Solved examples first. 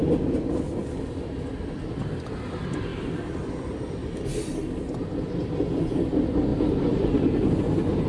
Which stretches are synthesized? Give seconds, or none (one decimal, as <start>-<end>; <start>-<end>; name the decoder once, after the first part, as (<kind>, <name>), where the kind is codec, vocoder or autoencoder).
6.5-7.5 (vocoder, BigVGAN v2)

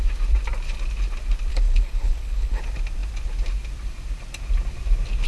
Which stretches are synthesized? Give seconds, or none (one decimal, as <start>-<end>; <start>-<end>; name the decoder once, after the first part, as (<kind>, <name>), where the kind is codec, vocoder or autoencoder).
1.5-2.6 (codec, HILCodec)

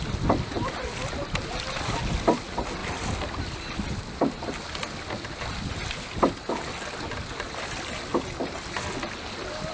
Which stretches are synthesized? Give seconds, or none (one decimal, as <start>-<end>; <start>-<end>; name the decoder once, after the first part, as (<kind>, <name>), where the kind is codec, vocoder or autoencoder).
none

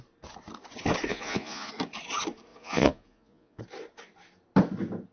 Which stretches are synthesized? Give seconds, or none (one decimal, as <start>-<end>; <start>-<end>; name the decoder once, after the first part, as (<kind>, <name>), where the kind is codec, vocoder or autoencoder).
1.1-1.7 (vocoder, Vocos); 2.5-3.6

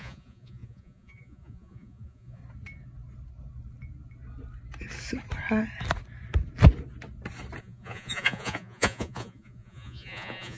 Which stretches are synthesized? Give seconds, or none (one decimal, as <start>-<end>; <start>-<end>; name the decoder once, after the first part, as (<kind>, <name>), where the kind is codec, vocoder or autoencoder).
0.0-2.4 (vocoder, Vocos); 7.6-10.6

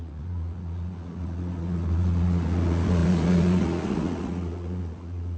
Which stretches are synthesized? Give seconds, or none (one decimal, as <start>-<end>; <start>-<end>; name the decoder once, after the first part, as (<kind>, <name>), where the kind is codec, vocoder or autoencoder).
0.0-5.4 (vocoder, Vocos)

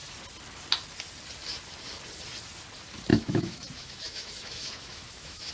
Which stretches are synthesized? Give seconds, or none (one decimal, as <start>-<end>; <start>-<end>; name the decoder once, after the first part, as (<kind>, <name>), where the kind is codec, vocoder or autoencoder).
3.1-5.5 (autoencoder, DAC-VAE)